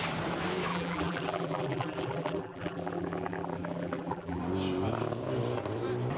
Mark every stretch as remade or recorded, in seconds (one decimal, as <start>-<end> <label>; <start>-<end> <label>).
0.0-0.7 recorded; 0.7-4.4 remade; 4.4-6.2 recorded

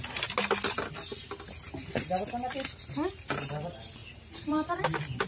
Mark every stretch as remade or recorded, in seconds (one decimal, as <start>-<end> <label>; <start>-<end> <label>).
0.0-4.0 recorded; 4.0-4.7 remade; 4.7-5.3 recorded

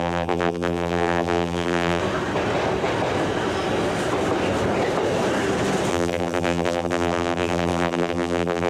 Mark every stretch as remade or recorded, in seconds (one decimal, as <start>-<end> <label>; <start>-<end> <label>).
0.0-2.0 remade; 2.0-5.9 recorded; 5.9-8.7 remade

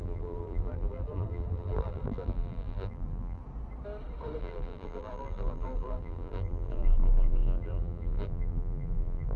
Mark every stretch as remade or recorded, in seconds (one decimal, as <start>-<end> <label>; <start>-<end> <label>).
0.0-3.4 remade; 3.4-4.4 recorded; 4.4-9.4 remade